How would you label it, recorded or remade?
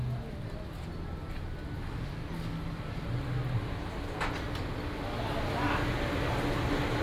recorded